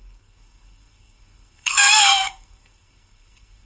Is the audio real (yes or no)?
no